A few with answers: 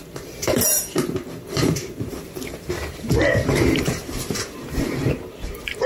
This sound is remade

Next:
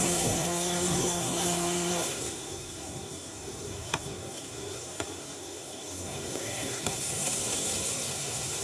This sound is remade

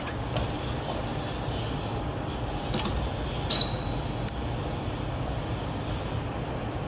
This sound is recorded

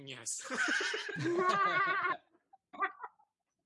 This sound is recorded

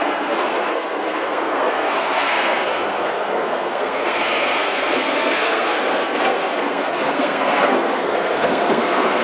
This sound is remade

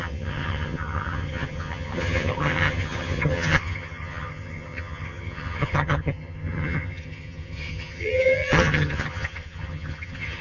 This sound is remade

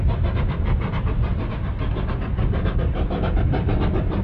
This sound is recorded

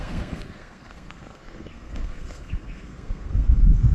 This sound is remade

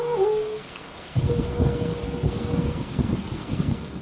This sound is remade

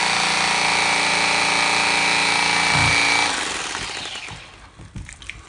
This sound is recorded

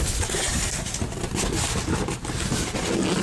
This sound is recorded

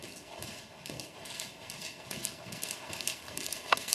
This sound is remade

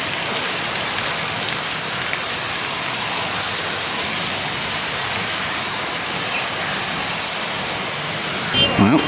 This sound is recorded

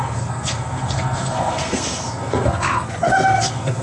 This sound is remade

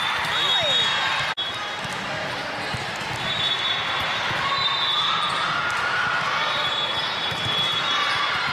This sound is recorded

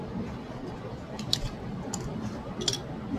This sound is remade